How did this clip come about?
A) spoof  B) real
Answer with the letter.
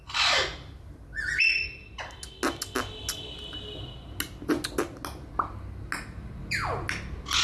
B